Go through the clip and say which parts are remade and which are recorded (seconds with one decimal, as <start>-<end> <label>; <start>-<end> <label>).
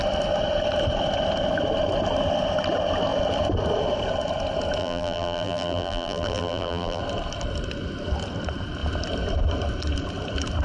0.0-4.8 recorded; 4.8-7.0 remade; 7.0-10.6 recorded